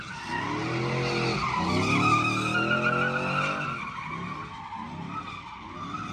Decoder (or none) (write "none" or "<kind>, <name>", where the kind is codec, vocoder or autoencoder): none